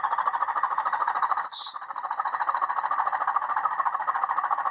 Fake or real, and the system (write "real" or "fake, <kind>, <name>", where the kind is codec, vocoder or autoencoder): real